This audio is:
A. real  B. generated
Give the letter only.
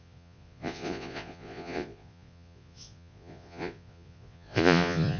B